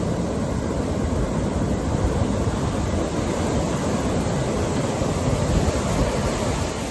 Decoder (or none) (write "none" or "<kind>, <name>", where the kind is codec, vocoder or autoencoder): none